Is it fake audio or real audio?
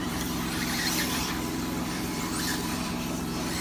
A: fake